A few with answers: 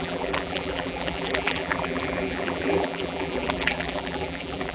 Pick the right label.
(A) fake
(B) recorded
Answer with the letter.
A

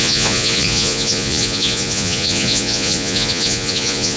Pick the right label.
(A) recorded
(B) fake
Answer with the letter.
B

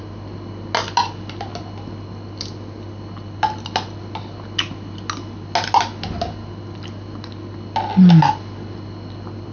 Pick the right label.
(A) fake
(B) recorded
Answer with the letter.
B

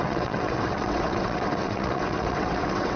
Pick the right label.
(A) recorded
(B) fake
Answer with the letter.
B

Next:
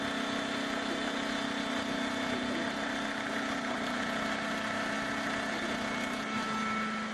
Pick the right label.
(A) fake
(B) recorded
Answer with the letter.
B